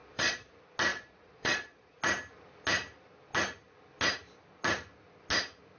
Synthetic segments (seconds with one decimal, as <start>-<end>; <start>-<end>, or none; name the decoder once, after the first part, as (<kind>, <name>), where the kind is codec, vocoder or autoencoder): 0.0-0.5 (vocoder, Vocos); 0.9-2.0